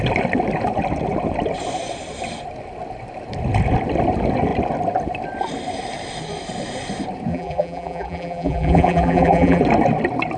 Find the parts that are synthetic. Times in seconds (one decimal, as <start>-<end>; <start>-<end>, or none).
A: 7.3-9.6

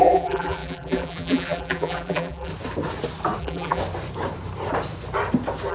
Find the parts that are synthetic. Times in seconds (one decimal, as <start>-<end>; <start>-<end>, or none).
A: 0.0-2.5; 3.4-3.8

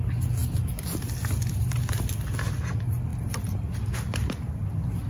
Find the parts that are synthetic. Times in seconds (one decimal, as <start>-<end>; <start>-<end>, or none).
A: none